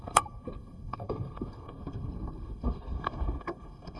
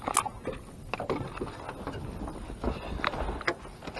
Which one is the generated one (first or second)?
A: first